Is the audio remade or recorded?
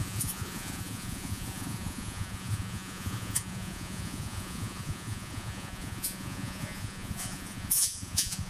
remade